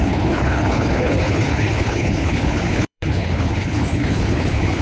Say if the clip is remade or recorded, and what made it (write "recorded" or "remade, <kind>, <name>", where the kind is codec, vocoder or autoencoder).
remade, codec, HILCodec